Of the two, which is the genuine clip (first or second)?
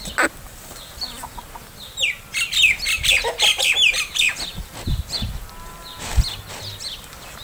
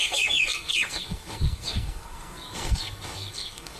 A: first